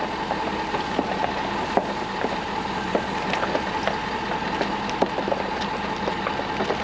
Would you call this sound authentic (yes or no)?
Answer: yes